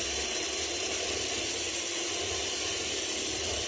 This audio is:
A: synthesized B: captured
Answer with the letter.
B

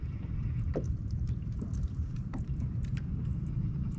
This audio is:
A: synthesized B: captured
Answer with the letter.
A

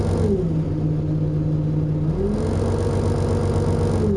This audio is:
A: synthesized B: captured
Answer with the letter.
B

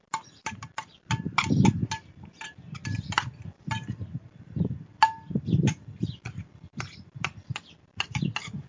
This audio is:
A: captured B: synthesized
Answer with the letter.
B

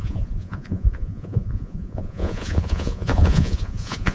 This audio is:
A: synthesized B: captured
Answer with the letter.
A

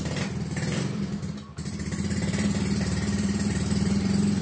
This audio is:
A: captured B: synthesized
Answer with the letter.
B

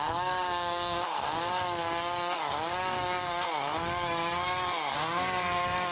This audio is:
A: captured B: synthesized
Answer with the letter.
B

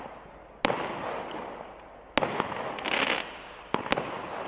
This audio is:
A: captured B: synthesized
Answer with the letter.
A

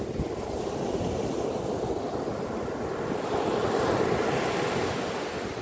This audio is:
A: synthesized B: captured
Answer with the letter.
B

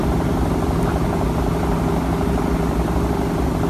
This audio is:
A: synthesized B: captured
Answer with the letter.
B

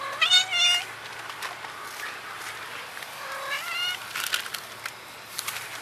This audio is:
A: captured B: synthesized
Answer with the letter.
A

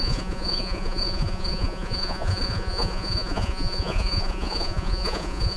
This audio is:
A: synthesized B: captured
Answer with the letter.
A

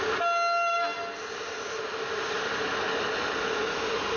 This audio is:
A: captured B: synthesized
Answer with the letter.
A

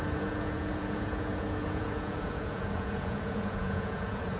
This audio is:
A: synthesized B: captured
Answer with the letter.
A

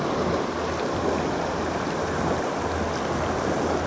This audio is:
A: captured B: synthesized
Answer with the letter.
A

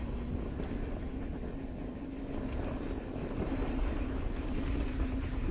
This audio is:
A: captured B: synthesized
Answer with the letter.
A